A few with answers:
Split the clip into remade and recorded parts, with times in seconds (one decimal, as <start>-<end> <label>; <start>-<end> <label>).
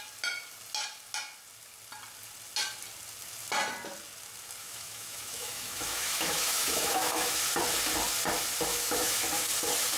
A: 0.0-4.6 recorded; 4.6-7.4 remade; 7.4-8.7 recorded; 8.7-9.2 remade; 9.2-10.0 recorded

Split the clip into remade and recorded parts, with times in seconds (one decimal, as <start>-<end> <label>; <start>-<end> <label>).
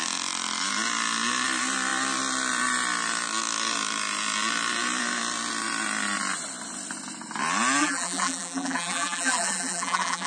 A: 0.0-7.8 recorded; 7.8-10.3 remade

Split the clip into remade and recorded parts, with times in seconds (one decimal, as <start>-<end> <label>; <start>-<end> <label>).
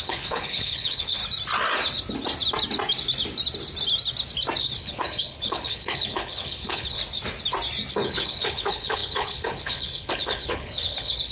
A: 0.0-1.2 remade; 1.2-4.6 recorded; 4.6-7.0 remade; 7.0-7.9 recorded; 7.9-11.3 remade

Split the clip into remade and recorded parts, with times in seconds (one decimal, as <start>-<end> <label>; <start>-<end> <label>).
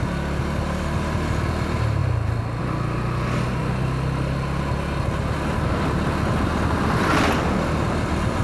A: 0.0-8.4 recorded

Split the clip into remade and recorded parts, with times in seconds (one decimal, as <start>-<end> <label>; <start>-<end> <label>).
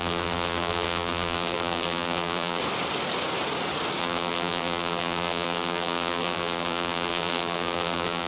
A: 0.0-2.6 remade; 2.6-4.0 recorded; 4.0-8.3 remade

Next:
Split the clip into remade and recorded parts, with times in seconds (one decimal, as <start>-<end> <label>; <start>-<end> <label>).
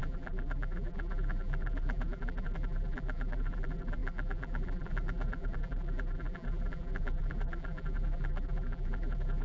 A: 0.0-9.4 remade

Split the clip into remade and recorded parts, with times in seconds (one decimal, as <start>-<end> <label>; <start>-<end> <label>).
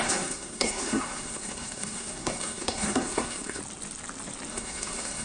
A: 0.0-3.6 remade; 3.6-4.5 recorded; 4.5-5.2 remade